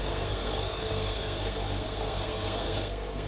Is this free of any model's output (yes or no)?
no